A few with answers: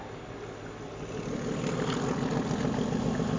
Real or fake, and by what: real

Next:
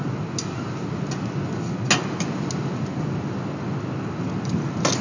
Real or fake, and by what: real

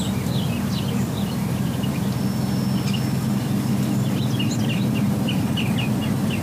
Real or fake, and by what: real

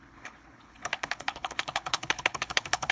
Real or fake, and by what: fake, codec, HILCodec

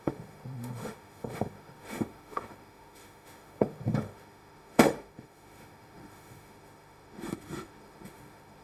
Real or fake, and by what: fake, autoencoder, DAC-VAE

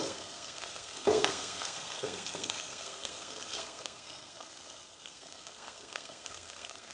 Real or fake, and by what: fake, codec, SNAC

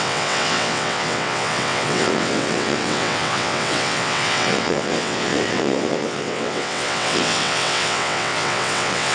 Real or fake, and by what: fake, vocoder, WaveNeXt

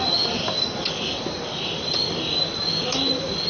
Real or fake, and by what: real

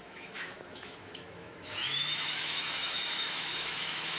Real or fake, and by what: fake, autoencoder, DAC-VAE